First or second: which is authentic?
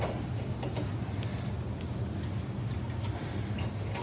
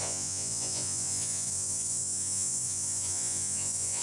first